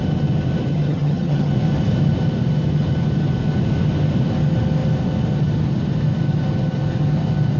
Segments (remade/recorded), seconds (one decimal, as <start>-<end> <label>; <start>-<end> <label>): 0.0-0.7 recorded; 0.7-1.5 remade; 1.5-7.6 recorded